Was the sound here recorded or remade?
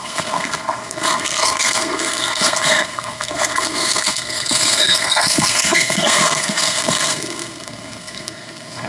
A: remade